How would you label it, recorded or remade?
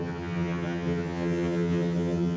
remade